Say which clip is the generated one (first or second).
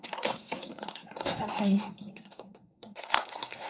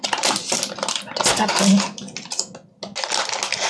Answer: first